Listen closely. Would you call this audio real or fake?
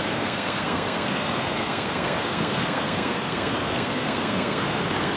fake